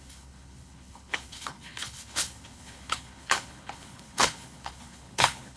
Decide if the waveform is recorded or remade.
remade